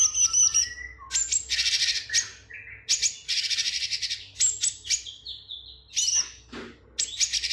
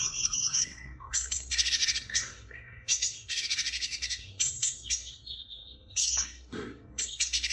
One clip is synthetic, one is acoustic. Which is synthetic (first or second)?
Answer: second